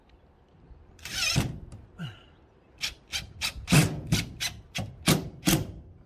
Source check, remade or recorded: recorded